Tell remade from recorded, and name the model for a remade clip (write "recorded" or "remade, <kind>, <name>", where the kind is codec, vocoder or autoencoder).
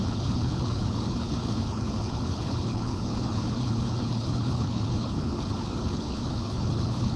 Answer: remade, codec, HILCodec